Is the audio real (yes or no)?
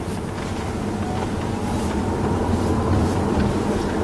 yes